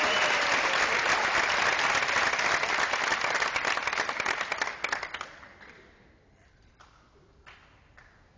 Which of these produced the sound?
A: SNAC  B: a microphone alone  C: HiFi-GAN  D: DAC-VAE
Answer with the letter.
B